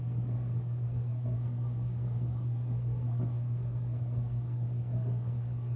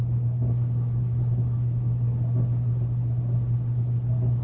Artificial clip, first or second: first